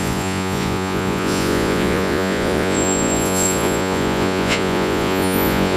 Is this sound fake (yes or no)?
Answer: yes